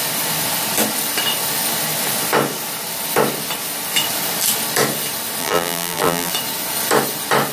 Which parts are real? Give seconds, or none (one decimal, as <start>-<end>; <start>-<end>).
0.0-5.4; 6.3-7.5